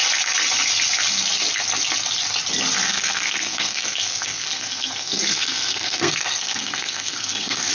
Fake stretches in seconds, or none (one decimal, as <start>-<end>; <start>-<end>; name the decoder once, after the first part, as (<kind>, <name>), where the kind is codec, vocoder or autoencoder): 2.8-7.7 (codec, SNAC)